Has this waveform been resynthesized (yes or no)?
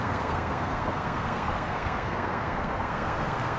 yes